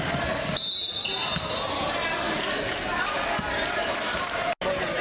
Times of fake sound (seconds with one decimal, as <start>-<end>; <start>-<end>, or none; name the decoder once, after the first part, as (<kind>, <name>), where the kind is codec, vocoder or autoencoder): none